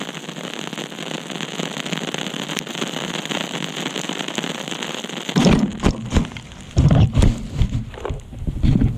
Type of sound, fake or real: real